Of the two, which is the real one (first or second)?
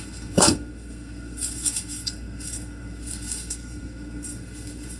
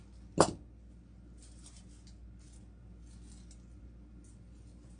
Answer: second